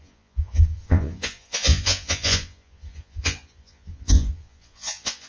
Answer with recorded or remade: remade